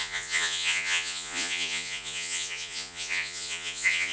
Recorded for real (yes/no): no